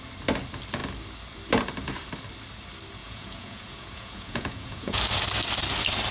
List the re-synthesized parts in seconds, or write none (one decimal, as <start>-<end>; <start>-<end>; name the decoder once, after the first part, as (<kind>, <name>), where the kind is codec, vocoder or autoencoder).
3.0-5.0 (vocoder, Vocos)